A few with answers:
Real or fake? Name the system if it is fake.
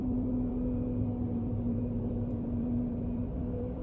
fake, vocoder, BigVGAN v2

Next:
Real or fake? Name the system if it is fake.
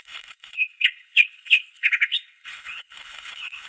fake, codec, HILCodec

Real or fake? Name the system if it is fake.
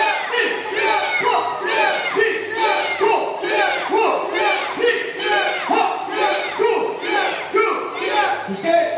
real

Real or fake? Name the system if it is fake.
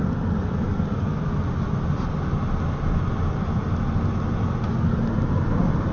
real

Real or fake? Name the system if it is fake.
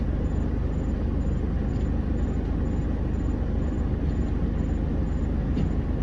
real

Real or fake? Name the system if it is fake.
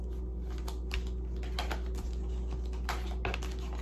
real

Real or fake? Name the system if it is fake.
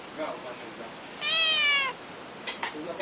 real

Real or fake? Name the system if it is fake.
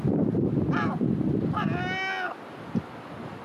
real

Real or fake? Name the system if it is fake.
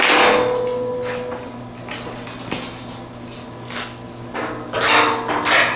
real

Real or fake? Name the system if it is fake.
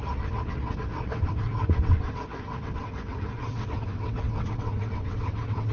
fake, vocoder, WaveNeXt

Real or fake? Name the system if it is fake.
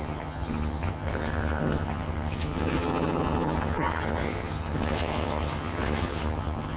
fake, vocoder, HiFi-GAN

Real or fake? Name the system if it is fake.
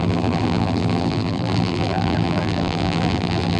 fake, vocoder, BigVGAN v2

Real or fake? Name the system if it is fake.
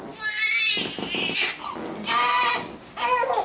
real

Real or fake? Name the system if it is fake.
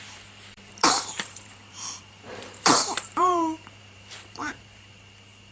fake, vocoder, BigVGAN v2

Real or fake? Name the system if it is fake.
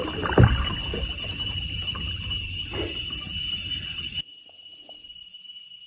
fake, vocoder, BigVGAN v2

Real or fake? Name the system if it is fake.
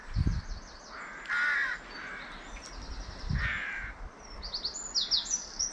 real